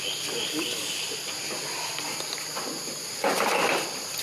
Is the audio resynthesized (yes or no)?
no